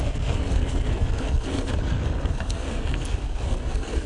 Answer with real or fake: fake